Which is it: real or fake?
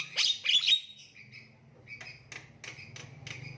real